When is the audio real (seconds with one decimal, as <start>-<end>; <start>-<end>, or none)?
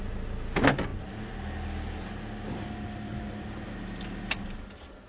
0.0-5.1